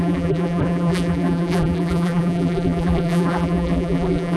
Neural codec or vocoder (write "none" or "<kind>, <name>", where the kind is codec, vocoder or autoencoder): vocoder, BigVGAN v2